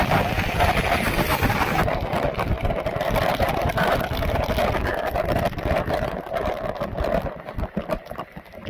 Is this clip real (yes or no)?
yes